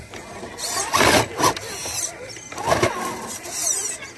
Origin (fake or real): real